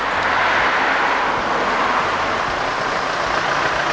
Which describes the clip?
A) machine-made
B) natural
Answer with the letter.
B